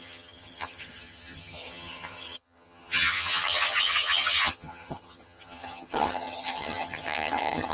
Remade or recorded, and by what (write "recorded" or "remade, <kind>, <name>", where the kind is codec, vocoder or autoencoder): remade, vocoder, HiFi-GAN